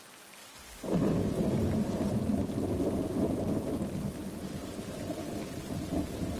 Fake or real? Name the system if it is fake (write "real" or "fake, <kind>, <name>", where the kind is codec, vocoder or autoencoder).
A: real